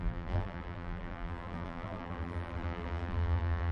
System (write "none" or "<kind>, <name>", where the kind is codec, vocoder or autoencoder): vocoder, BigVGAN v2